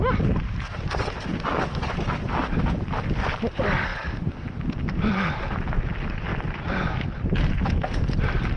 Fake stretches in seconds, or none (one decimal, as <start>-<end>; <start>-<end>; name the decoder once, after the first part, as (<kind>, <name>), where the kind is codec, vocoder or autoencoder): 1.3-2.0 (vocoder, BigVGAN v2); 6.3-7.2